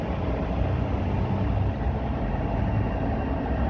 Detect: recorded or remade recorded